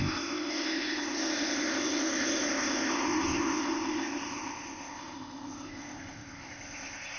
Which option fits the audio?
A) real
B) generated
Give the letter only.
B